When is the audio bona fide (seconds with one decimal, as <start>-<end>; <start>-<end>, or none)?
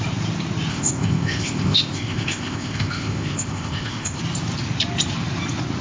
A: 0.0-0.7; 4.2-5.8